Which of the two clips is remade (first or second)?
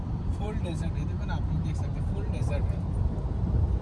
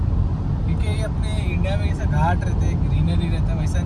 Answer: first